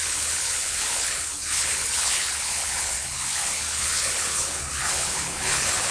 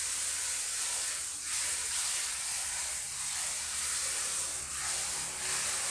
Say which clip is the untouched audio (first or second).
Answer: second